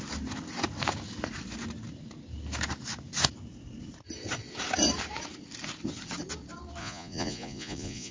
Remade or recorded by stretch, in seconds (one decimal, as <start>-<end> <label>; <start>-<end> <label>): 0.0-6.8 recorded; 6.8-8.1 remade